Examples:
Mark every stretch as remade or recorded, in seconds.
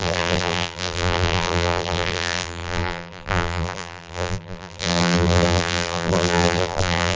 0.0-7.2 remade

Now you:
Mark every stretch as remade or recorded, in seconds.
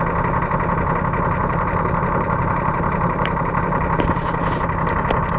0.0-1.4 recorded; 1.4-4.6 remade; 4.6-5.4 recorded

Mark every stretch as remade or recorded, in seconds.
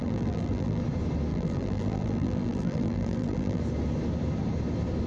0.0-0.8 remade; 0.8-1.3 recorded; 1.3-3.6 remade; 3.6-5.1 recorded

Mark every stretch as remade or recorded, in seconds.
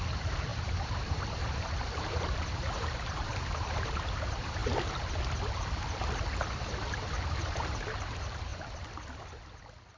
0.0-4.6 remade; 4.6-6.5 recorded; 6.5-8.5 remade; 8.5-10.0 recorded